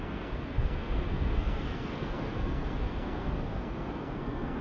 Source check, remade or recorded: remade